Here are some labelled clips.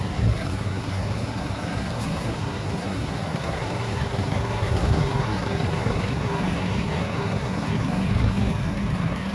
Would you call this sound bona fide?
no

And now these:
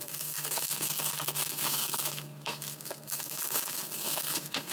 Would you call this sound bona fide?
no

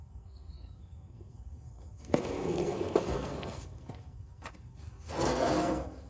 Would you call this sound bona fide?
no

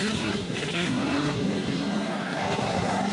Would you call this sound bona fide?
no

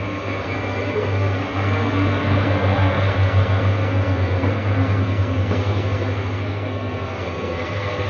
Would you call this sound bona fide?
no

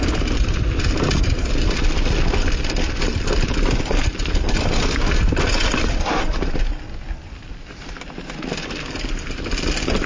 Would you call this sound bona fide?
yes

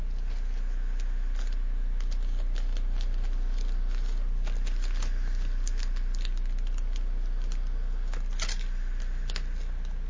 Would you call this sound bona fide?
yes